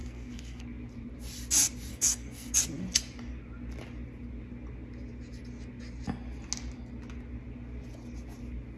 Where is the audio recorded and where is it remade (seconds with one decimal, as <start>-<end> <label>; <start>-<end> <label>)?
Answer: 0.0-0.6 remade; 0.6-1.9 recorded; 1.9-2.6 remade; 2.6-8.8 recorded